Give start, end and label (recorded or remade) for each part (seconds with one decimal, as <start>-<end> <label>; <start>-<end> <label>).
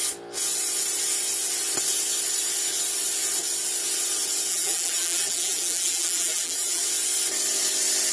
0.0-4.5 recorded; 4.5-6.8 remade; 6.8-8.1 recorded